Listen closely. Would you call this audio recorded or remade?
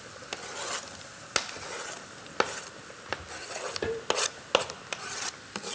recorded